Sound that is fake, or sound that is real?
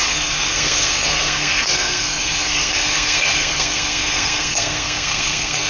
fake